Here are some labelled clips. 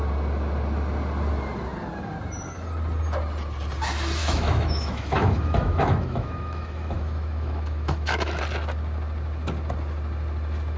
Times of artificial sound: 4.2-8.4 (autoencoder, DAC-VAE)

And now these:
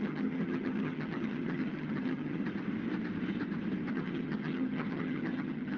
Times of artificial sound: 0.0-2.4 (vocoder, HiFi-GAN); 3.9-5.8

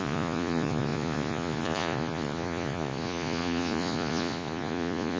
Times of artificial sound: 0.0-5.2 (vocoder, Vocos)

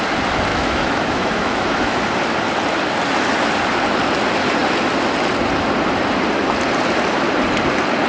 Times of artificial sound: 0.5-2.0 (autoencoder, DAC-VAE)

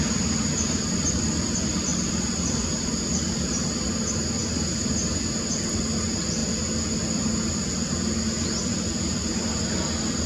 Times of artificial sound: none

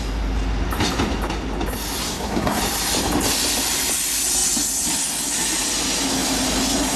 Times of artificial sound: 2.0-2.6 (codec, SNAC)

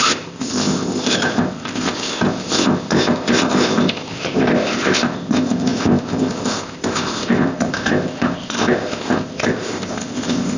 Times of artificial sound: 0.0-10.6 (codec, ZipCodec)

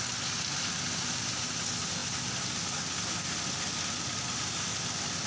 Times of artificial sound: none